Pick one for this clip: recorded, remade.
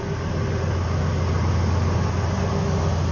recorded